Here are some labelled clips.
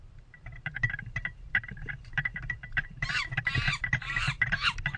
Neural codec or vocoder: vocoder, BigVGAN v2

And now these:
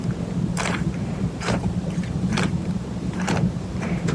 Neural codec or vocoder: vocoder, BigVGAN v2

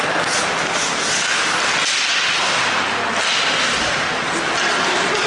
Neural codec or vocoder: none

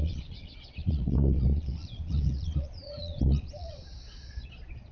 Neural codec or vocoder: vocoder, Vocos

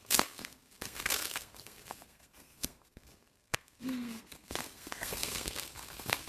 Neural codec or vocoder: codec, SNAC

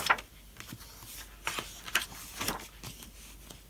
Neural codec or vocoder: none